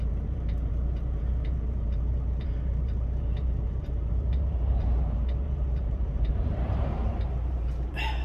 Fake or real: fake